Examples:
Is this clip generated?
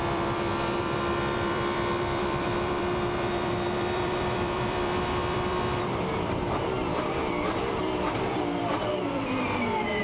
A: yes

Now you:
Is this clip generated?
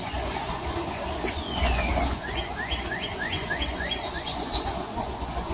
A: yes